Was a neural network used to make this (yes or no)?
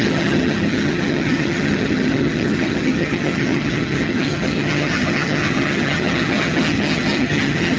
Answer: yes